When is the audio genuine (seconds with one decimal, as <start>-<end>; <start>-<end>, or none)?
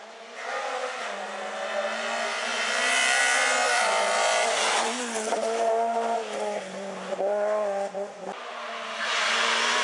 0.0-9.8